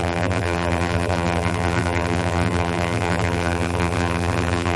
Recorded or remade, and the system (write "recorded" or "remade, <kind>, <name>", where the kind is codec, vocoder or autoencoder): remade, vocoder, BigVGAN v2